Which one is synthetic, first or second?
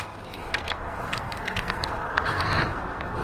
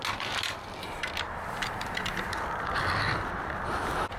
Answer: first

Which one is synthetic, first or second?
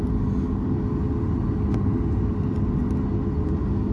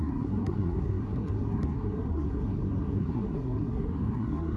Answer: second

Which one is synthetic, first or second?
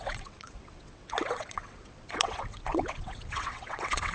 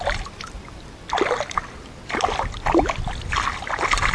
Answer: first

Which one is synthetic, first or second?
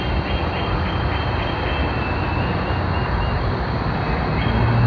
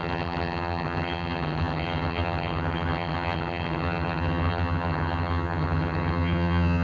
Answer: second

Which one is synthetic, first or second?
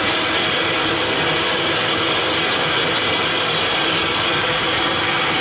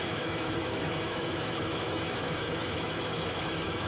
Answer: second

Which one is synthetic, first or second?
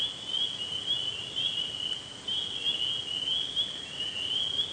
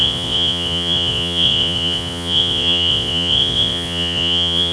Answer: second